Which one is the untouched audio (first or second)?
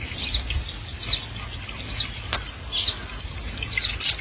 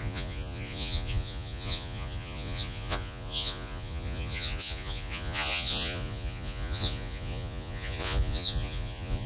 first